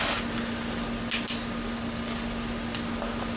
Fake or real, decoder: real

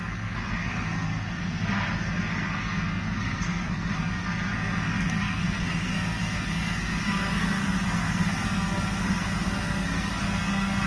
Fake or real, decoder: fake, codec, SNAC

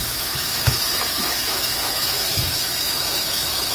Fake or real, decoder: fake, autoencoder, DAC-VAE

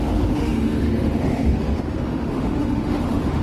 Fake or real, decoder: fake, autoencoder, DAC-VAE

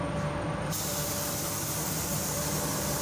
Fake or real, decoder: real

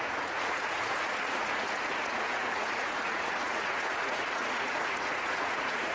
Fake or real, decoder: fake, vocoder, Vocos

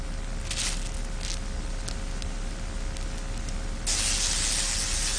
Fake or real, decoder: real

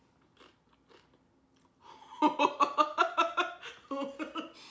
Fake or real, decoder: real